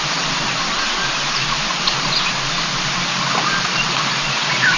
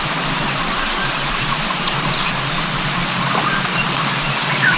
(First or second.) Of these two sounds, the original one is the first